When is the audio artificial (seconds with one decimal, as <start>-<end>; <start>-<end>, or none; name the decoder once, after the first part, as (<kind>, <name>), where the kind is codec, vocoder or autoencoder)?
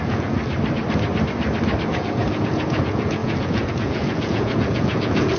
0.0-0.4 (vocoder, Vocos); 1.9-5.4